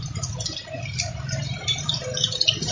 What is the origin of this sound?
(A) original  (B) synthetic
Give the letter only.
A